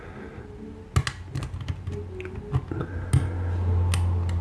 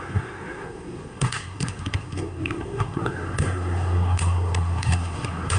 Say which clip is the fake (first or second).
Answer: second